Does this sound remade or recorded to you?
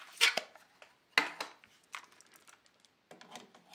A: recorded